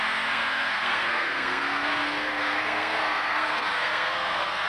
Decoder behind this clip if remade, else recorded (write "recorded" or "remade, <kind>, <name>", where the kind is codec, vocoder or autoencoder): remade, codec, SNAC